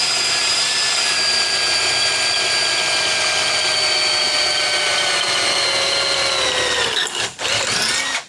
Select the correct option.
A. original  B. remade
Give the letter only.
A